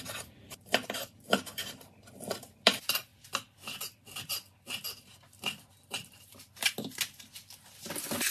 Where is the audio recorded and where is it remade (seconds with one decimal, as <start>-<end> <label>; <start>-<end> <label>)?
0.0-3.1 remade; 3.1-8.3 recorded